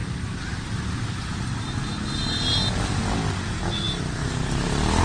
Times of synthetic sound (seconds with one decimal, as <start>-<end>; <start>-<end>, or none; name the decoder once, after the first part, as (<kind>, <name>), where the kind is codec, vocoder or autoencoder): none